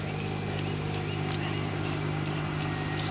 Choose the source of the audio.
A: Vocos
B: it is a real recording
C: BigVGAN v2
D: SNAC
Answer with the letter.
B